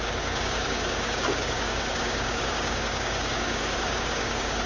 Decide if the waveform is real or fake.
fake